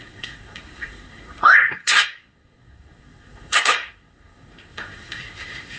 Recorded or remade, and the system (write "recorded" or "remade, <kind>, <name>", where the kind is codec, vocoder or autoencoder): remade, codec, SNAC